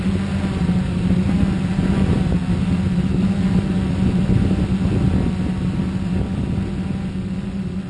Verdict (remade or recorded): recorded